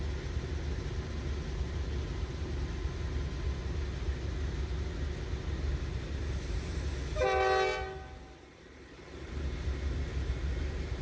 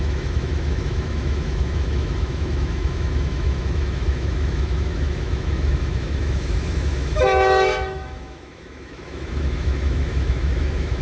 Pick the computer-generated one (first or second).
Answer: second